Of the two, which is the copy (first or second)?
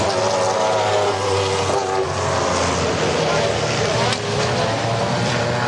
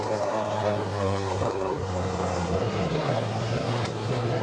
second